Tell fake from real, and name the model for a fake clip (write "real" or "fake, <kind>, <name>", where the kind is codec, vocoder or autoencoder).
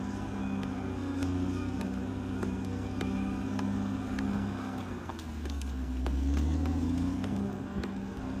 fake, codec, SNAC